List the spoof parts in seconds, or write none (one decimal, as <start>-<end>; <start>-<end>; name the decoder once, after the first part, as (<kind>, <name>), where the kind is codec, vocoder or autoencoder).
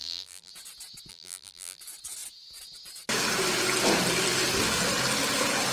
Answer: 0.0-0.5 (vocoder, BigVGAN v2); 1.1-1.8